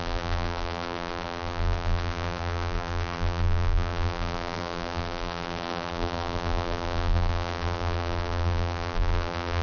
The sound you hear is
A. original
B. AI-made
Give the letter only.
B